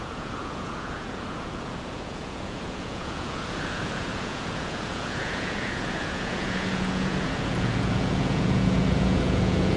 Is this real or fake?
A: fake